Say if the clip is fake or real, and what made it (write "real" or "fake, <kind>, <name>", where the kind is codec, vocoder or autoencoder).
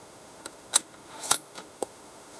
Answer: fake, autoencoder, DAC-VAE